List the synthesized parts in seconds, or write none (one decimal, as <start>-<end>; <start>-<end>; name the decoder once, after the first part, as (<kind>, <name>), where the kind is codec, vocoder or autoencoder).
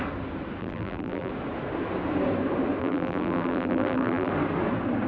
0.6-1.3 (vocoder, BigVGAN v2); 2.8-4.3